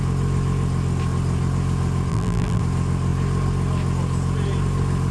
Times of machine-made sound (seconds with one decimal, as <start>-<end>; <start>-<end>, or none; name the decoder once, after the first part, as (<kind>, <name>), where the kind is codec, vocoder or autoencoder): 2.1-2.6 (vocoder, BigVGAN v2)